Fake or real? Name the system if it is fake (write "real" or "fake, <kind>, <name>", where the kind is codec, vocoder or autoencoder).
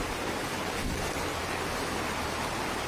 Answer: real